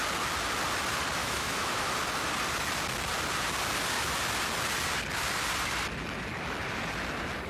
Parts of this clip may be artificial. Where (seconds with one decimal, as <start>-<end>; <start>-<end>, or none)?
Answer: 1.2-1.8